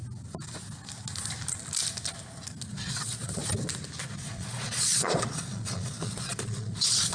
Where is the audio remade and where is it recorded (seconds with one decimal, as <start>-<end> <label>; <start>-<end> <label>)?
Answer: 0.0-2.7 recorded; 2.7-3.4 remade; 3.4-4.0 recorded; 4.0-7.1 remade